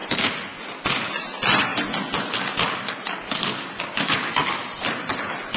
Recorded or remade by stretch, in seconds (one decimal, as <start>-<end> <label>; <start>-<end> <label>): 0.0-4.4 recorded; 4.4-5.1 remade; 5.1-5.6 recorded